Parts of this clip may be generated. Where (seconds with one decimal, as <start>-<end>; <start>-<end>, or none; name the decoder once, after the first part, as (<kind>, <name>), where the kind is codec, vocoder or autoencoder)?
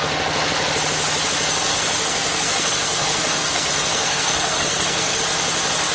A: 1.7-5.2 (codec, SNAC)